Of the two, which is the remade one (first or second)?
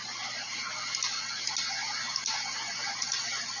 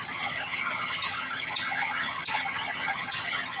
second